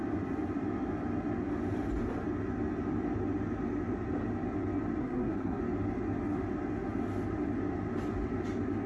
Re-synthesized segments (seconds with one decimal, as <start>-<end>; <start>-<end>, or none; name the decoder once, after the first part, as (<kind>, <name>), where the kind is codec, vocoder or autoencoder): 5.0-5.6 (codec, SNAC)